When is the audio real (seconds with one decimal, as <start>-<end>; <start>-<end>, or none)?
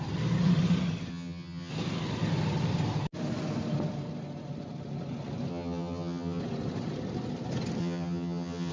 0.0-1.1; 1.7-5.5; 6.4-7.8